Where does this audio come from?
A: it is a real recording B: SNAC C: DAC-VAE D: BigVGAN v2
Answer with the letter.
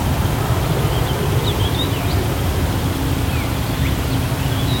A